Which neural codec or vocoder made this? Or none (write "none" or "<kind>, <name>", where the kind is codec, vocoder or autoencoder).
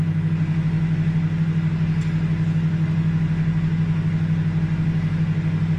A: none